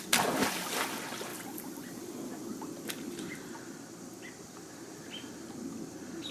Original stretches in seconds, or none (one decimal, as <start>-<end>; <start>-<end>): 0.0-1.3; 3.5-6.3